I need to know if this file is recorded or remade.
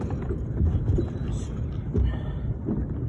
recorded